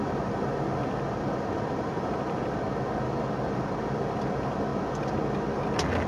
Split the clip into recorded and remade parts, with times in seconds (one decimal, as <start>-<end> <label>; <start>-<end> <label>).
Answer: 0.0-6.1 recorded